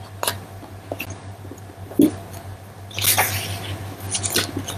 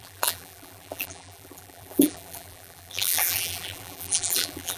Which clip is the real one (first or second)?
first